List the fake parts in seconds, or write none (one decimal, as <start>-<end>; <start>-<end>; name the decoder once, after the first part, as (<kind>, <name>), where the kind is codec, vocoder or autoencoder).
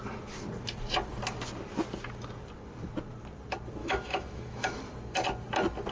3.8-4.8 (autoencoder, DAC-VAE)